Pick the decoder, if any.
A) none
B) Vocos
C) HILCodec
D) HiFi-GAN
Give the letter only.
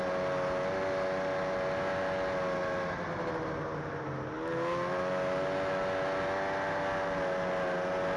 A